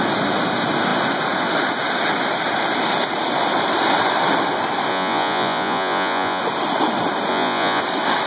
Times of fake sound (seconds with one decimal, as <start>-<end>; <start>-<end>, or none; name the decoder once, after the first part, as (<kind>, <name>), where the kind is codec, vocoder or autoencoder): 4.9-6.4 (vocoder, Vocos); 7.3-7.8